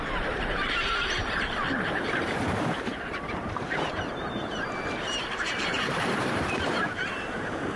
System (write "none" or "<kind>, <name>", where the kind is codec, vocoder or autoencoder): vocoder, BigVGAN v2